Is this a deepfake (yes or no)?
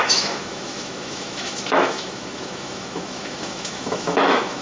yes